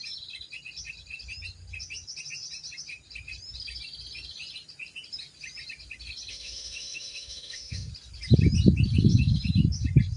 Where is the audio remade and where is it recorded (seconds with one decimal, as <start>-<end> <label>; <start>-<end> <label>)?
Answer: 0.0-6.3 recorded; 6.3-7.9 remade; 7.9-10.2 recorded